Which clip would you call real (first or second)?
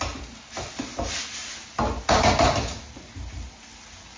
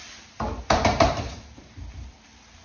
first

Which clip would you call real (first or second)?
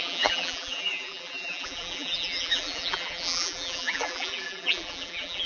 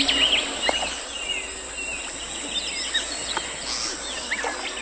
second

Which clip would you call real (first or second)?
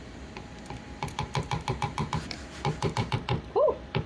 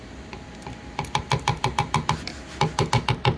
second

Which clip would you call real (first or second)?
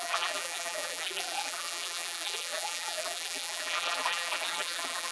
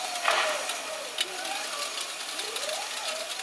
second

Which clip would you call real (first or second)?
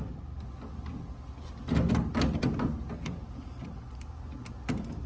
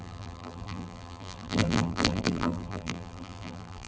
first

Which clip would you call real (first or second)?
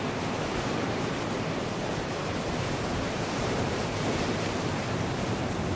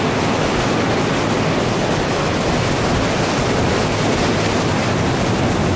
second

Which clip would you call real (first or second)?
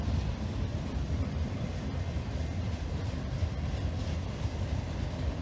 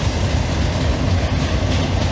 second